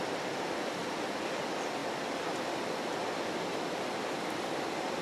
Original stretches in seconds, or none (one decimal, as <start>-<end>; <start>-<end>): 0.0-0.8; 1.4-5.0